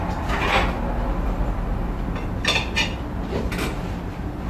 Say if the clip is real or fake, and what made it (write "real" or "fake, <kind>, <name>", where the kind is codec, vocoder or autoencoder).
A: real